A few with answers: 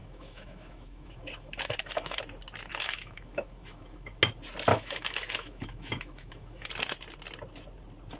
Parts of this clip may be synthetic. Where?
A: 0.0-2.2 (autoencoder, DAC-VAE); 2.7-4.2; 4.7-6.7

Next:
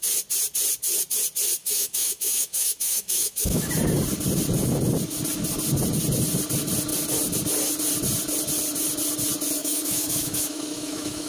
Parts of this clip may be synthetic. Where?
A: 1.6-3.7 (autoencoder, DAC-VAE); 9.6-11.3

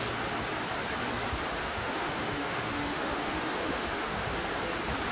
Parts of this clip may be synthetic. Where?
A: 1.6-4.3 (autoencoder, DAC-VAE)